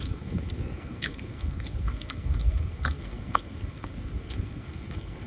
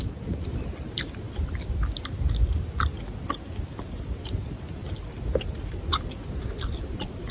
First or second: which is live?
second